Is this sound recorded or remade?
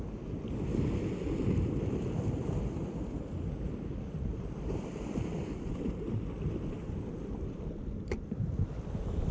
recorded